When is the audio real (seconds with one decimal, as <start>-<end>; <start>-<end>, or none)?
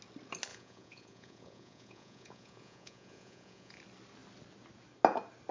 0.0-0.5; 3.8-5.5